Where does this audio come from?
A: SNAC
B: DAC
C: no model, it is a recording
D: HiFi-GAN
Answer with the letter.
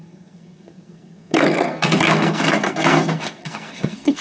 A